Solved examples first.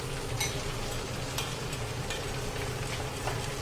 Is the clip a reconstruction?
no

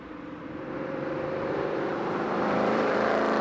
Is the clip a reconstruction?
yes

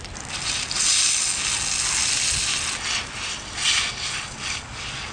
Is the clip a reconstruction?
no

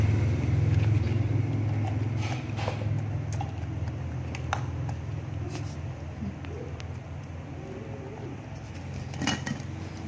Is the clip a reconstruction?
no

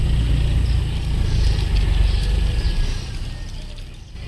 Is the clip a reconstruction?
no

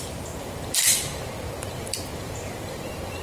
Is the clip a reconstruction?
yes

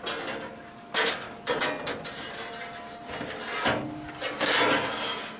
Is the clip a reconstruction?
no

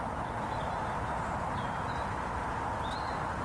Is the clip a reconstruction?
no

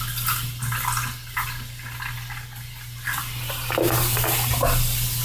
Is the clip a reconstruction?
no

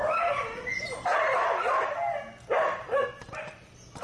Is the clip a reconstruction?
no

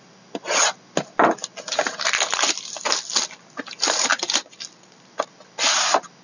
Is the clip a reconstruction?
no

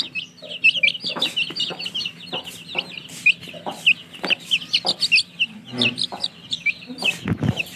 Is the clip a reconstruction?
no